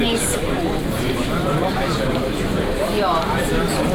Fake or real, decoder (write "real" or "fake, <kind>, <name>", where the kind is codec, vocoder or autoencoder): fake, vocoder, BigVGAN v2